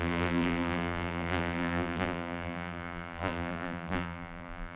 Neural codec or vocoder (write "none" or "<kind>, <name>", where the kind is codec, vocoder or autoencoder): vocoder, BigVGAN v2